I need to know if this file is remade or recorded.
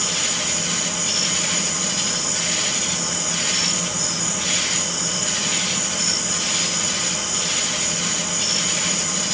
recorded